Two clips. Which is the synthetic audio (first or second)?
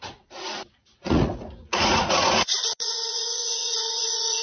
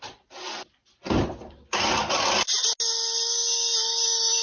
first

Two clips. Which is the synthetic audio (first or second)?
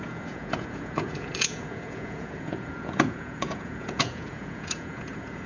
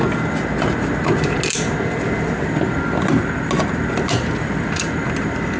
first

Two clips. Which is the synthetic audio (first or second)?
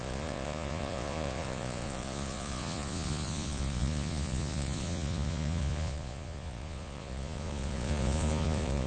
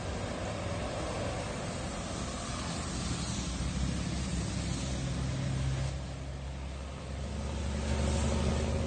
first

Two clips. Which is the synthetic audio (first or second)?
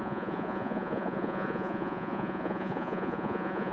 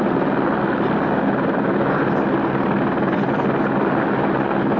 first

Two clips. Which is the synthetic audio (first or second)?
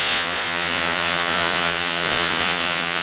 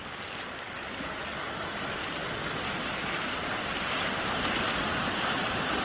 first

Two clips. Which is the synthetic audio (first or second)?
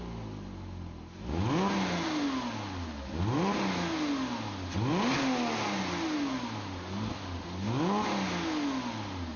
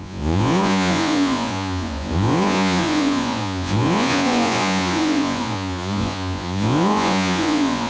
second